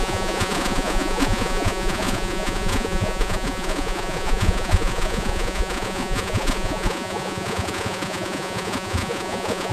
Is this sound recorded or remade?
remade